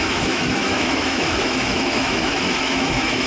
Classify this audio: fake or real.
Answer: fake